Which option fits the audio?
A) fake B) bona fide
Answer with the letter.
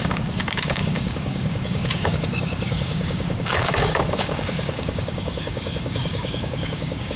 A